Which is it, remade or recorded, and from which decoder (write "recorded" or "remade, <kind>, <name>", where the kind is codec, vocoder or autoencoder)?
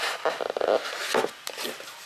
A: recorded